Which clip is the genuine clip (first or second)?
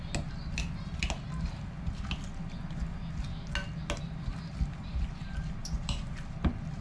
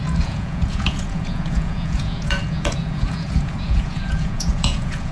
first